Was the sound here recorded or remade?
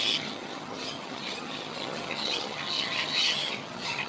remade